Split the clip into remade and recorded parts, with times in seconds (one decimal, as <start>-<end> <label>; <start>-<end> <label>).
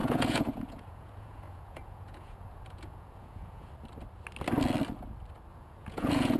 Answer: 0.0-3.7 remade; 3.7-5.5 recorded; 5.5-6.4 remade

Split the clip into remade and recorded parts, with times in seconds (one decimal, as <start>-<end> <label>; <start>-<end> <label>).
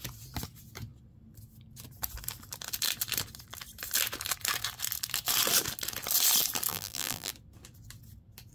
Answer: 0.0-6.7 recorded; 6.7-7.3 remade; 7.3-8.5 recorded